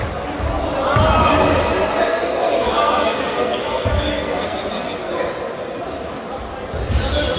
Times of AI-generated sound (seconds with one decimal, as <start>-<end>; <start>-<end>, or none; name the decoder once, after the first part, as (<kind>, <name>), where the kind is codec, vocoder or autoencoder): 2.1-5.1 (codec, SNAC)